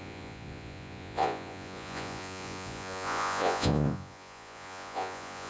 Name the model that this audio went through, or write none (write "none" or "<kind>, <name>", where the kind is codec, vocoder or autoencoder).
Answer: vocoder, Vocos